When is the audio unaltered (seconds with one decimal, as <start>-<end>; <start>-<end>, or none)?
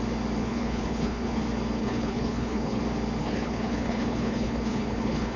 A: 0.0-0.4; 1.4-1.8; 2.8-3.2